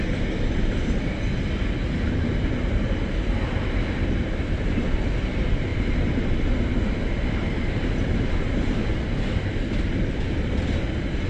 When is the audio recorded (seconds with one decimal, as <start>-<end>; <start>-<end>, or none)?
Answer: 0.0-11.3